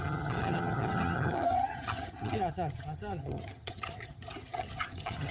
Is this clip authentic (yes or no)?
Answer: no